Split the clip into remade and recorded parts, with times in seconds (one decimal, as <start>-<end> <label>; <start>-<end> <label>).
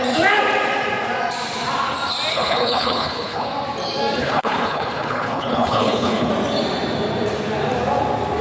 0.0-2.3 recorded; 2.3-3.5 remade; 3.5-4.2 recorded; 4.2-6.3 remade; 6.3-8.4 recorded